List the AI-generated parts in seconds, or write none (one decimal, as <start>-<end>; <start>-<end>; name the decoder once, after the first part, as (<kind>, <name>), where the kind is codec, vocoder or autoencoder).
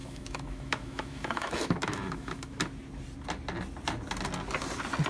0.0-2.6 (autoencoder, DAC-VAE)